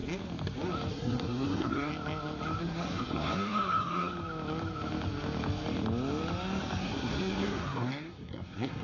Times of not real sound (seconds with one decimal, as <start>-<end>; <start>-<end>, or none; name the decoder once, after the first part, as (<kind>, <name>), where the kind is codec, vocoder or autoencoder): 0.9-1.9 (codec, SNAC); 2.6-4.1; 6.8-8.8